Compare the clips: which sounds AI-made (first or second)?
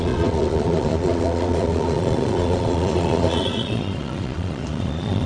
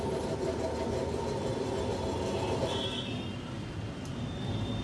first